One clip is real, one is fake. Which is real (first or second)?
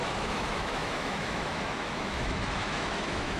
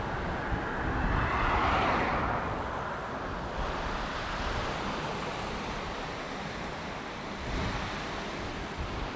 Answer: second